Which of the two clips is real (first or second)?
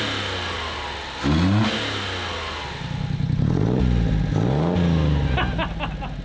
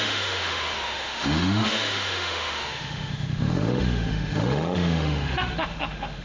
first